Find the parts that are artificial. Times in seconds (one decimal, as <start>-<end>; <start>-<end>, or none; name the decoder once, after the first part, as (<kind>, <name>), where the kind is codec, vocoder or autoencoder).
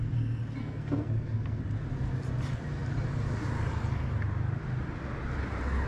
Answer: 0.6-1.6 (codec, SNAC)